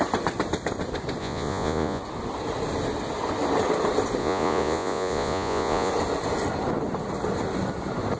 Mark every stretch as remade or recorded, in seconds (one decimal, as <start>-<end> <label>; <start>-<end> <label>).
0.0-1.2 recorded; 1.2-2.0 remade; 2.0-4.2 recorded; 4.2-5.9 remade; 5.9-8.2 recorded